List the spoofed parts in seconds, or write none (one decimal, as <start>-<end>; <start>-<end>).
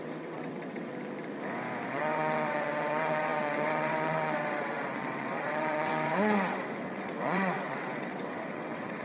0.0-0.9; 1.9-9.0